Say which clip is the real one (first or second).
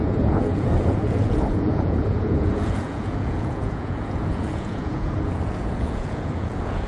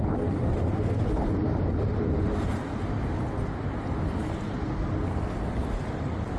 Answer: second